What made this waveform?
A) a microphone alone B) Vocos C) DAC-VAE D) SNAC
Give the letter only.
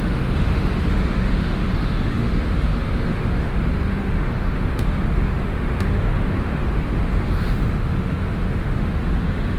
C